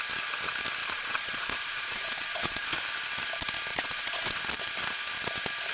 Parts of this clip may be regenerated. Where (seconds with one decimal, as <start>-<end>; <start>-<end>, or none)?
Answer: 0.8-2.7; 3.7-4.4